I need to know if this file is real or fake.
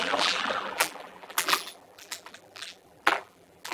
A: fake